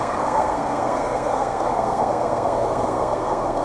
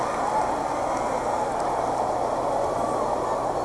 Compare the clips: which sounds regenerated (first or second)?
first